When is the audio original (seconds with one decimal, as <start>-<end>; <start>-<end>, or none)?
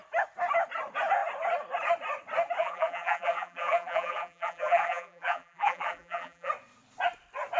0.0-2.6; 6.5-7.6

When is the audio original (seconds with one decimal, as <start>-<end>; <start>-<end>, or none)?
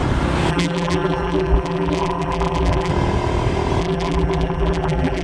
0.0-0.5; 2.9-3.8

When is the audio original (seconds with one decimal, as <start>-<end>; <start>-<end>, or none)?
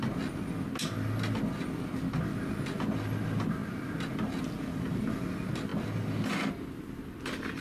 0.0-7.6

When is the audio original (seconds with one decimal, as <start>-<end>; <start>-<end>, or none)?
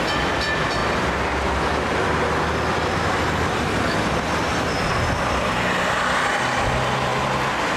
0.0-7.8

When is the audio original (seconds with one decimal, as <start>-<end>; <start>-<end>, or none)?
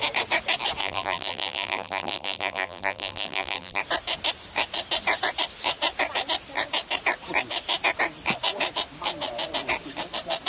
0.0-0.8; 3.8-10.5